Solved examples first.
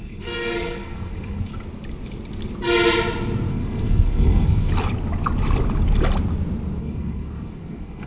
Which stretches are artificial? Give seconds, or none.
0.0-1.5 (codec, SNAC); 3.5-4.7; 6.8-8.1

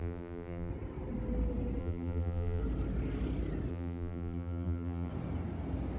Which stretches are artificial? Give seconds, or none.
0.0-0.7 (vocoder, BigVGAN v2); 1.8-2.6; 3.7-5.1

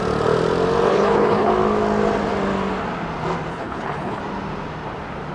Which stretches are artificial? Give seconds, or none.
0.9-1.5 (codec, HILCodec); 3.5-4.2